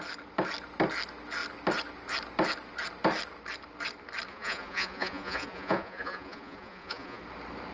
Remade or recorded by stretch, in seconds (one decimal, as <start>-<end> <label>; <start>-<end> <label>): 0.0-4.3 recorded; 4.3-7.2 remade; 7.2-7.7 recorded